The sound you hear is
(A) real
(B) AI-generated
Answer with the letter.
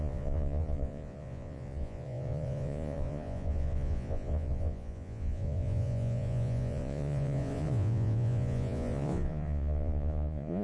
B